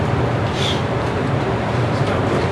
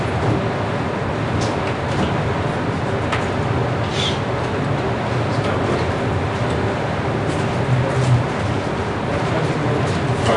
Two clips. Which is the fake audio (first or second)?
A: first